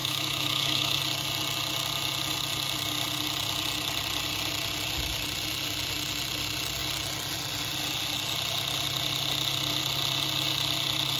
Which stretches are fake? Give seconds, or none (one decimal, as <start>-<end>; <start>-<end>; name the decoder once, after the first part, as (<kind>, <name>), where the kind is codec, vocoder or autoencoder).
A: 0.0-1.0 (autoencoder, DAC-VAE)